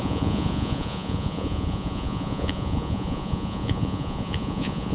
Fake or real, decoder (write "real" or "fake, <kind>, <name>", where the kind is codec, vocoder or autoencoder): fake, vocoder, Vocos